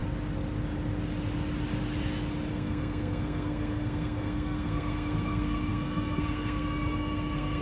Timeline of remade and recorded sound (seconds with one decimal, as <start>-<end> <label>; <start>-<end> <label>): 0.0-2.5 recorded; 2.5-7.6 remade